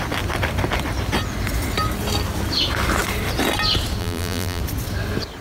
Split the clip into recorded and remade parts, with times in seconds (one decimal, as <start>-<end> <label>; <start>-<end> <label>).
0.0-4.0 recorded; 4.0-4.6 remade; 4.6-5.4 recorded